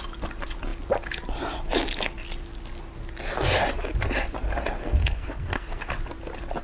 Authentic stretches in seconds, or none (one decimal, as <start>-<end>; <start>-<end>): 0.0-4.8; 5.9-6.6